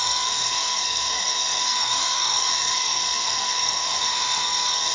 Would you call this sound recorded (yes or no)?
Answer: no